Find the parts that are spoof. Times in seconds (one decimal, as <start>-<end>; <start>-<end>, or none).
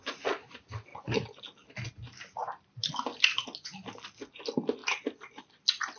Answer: none